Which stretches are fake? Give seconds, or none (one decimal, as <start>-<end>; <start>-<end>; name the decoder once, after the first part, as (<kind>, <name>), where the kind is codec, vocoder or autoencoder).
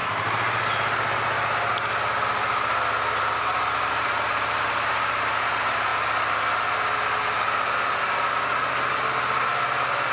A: 3.9-5.9 (vocoder, BigVGAN v2)